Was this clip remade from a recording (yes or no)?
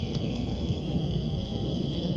yes